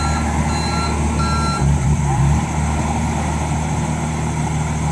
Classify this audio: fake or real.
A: real